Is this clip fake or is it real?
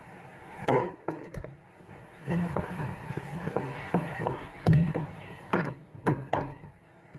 fake